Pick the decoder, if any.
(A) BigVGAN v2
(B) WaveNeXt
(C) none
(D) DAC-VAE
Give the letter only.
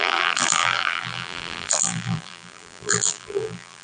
A